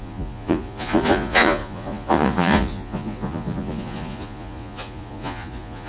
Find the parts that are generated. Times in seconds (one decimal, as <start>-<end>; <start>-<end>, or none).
0.0-5.9